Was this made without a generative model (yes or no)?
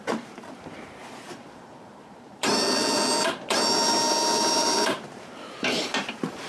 no